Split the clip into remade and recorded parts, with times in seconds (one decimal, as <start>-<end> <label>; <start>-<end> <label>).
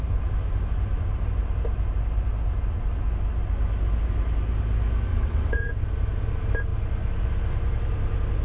0.0-5.1 recorded; 5.1-5.7 remade; 5.7-8.4 recorded